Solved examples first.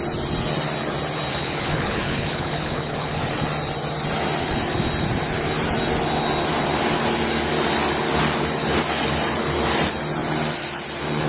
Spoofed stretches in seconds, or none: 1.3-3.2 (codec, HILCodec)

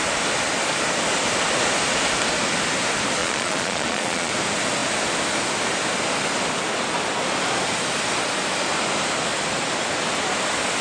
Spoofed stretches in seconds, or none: 3.2-4.3 (vocoder, Vocos)

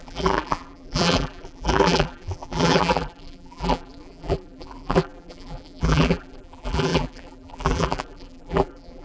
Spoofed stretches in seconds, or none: 0.0-9.0 (vocoder, BigVGAN v2)

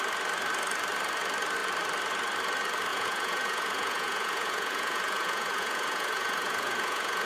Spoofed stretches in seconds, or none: 2.9-7.3 (vocoder, Vocos)

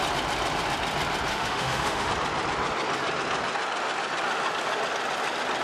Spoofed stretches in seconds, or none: 1.3-2.1 (autoencoder, DAC-VAE)

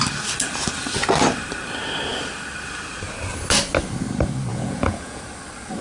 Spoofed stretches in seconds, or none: 4.5-5.2 (vocoder, Vocos)

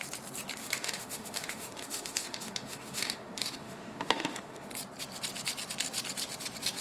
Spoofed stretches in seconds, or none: 0.6-4.7 (autoencoder, DAC-VAE)

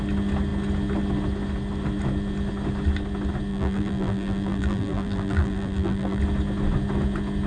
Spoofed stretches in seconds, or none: 3.5-6.2 (vocoder, BigVGAN v2)